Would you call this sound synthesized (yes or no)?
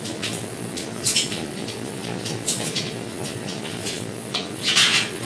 yes